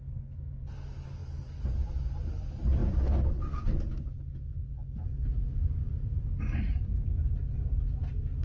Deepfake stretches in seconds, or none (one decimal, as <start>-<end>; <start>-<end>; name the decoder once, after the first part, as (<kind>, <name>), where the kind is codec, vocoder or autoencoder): 1.2-2.0 (vocoder, BigVGAN v2); 2.8-3.8; 5.8-6.4